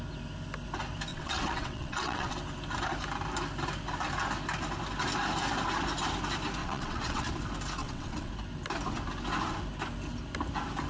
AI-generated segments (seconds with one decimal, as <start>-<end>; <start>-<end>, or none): 1.1-2.3; 6.6-7.3; 7.8-8.3